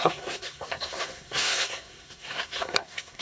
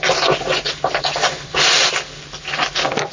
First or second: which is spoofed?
first